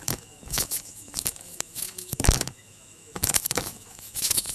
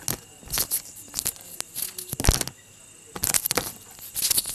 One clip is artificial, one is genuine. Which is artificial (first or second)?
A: first